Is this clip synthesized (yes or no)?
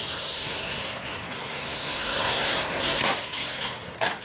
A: yes